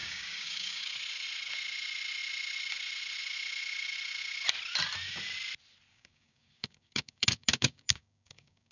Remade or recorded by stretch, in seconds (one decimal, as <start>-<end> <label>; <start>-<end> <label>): 0.0-0.9 remade; 0.9-5.9 recorded; 5.9-8.7 remade